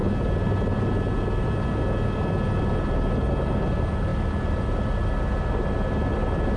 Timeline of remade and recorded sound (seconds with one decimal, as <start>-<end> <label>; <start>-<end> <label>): 0.0-6.6 recorded